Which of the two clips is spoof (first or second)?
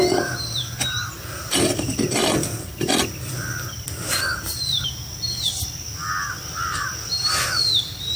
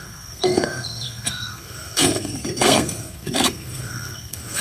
second